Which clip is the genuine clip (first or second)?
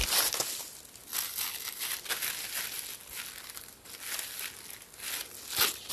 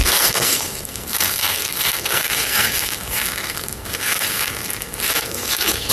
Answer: first